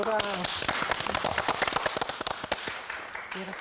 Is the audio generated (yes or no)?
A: no